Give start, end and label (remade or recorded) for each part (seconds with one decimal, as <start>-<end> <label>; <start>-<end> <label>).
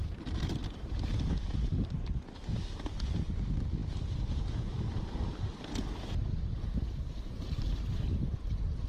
0.0-8.9 recorded